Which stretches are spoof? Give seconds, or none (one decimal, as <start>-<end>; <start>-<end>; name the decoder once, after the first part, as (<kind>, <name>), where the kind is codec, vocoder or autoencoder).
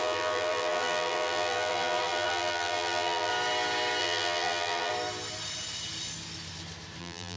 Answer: 0.0-3.3 (vocoder, BigVGAN v2); 4.0-4.9; 7.0-7.4